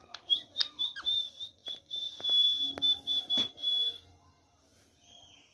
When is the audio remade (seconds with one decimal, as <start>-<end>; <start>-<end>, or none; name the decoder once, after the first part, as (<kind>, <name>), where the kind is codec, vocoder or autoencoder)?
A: none